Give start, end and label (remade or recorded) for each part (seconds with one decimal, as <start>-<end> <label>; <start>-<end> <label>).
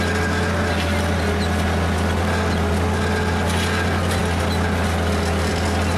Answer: 0.0-6.0 recorded